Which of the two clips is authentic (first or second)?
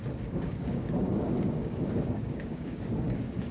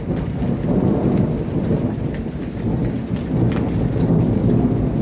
second